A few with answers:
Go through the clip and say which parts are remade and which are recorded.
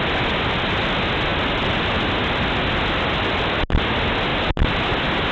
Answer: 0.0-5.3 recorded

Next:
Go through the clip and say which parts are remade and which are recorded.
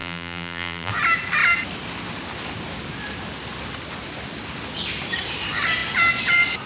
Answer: 0.0-0.9 remade; 0.9-6.7 recorded